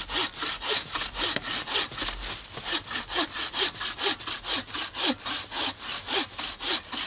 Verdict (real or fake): real